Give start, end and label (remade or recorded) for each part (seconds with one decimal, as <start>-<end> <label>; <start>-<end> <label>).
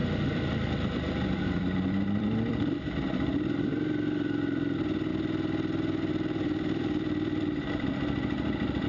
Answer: 0.0-5.1 remade; 5.1-6.1 recorded; 6.1-8.9 remade